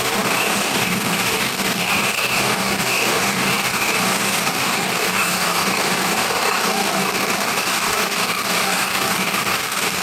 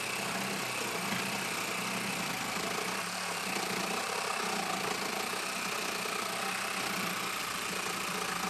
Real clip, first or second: second